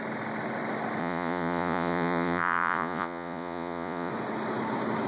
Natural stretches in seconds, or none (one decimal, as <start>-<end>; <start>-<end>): 0.0-1.0; 4.1-5.1